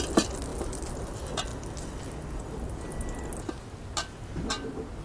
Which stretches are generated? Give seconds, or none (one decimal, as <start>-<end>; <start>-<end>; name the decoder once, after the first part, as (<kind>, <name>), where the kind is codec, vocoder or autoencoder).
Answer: none